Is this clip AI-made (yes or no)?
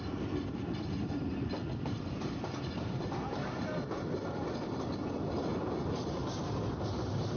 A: no